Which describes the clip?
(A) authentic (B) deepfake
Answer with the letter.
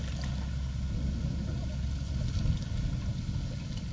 A